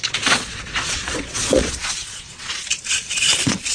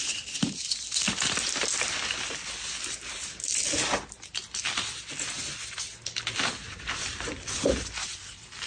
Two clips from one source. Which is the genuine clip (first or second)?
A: second